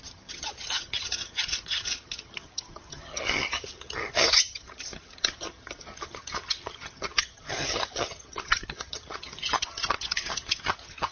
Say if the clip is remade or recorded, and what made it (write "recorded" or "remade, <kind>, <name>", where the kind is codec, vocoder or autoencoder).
remade, vocoder, HiFi-GAN